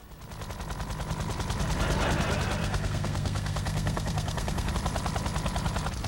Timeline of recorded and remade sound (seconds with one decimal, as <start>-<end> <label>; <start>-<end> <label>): 0.0-2.6 recorded; 2.6-4.7 remade; 4.7-6.1 recorded